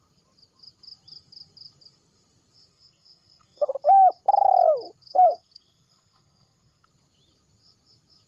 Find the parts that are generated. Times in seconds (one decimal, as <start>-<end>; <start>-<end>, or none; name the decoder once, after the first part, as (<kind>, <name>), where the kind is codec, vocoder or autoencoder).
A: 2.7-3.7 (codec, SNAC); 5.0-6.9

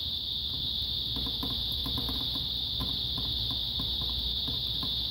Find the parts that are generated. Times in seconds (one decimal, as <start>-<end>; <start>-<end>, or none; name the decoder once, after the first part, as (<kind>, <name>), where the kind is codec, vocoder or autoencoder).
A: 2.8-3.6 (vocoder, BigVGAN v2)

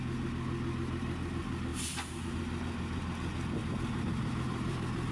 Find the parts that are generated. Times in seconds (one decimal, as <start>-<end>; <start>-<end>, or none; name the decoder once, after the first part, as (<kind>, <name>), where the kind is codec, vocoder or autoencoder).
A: 3.6-5.1 (vocoder, BigVGAN v2)

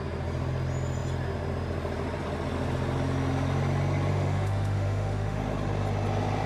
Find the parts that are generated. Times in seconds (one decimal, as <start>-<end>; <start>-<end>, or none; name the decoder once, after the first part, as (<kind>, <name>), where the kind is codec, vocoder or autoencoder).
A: 4.1-5.4 (autoencoder, DAC-VAE)

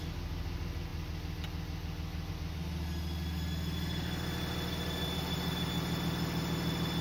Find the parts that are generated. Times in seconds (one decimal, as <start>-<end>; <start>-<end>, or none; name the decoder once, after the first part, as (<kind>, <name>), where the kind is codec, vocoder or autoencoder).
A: none

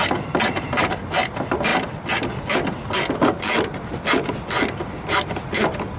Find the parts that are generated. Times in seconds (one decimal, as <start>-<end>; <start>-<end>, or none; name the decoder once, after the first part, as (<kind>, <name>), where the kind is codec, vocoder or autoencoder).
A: none

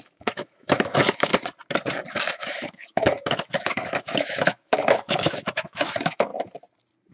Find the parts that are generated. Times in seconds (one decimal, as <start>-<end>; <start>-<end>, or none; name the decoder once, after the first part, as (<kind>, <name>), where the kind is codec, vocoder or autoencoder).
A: 0.0-1.3 (autoencoder, DAC-VAE); 2.3-6.3

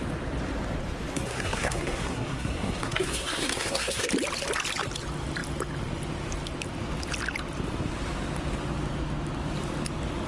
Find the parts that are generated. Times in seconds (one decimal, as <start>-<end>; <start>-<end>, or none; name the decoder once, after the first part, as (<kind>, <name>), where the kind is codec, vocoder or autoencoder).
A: 1.1-4.1 (codec, SNAC)